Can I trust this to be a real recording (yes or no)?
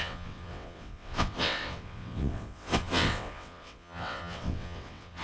no